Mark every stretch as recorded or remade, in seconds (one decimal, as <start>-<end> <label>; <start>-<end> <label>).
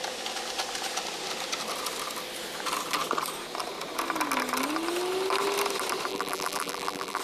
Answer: 0.0-6.1 recorded; 6.1-7.2 remade